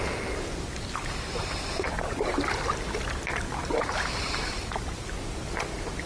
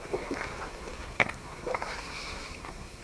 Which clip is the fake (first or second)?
second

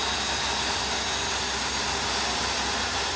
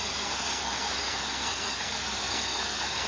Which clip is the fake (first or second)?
second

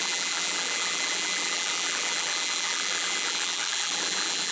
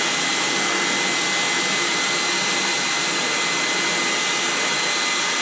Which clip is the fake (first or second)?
first